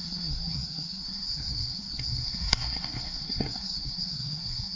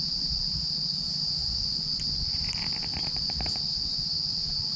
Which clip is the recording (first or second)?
second